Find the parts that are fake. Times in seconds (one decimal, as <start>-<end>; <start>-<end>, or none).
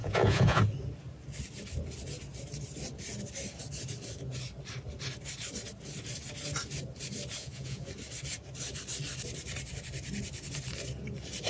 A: 0.0-0.6; 7.4-7.9